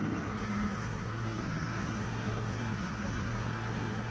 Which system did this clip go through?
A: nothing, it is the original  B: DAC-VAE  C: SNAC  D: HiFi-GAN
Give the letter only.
C